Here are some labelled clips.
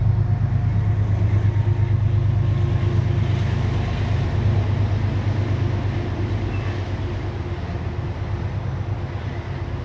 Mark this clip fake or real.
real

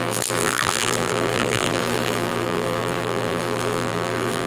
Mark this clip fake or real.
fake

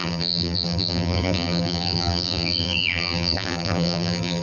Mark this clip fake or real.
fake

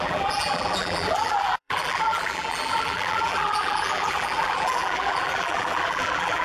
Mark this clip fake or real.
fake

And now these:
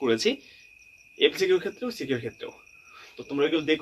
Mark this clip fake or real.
fake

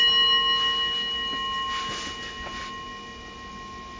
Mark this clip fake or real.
real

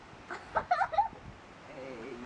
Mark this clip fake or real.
real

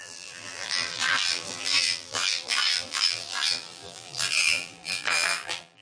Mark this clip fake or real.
fake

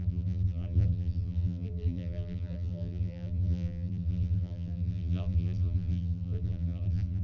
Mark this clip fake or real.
fake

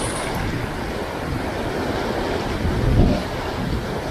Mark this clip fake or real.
real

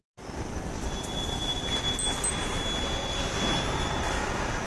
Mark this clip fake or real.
real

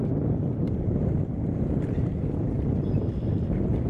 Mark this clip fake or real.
real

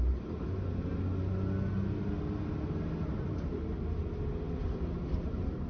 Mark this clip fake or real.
real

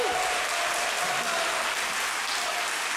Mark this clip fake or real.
real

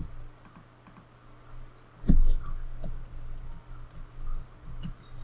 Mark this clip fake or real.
real